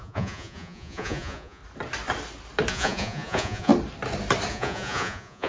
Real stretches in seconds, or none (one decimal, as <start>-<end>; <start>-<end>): 1.6-2.7; 3.7-4.5